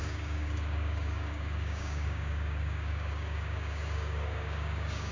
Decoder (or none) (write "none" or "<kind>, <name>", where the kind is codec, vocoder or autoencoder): codec, DAC